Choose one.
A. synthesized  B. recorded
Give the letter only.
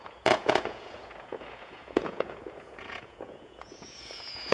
A